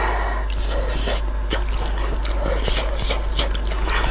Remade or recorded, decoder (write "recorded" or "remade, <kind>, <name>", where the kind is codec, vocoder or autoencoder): recorded